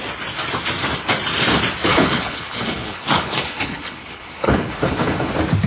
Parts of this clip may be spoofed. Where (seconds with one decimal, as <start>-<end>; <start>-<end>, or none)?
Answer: 1.9-5.3